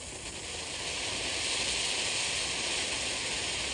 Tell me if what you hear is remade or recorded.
recorded